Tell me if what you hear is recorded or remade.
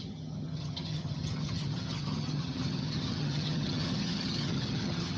remade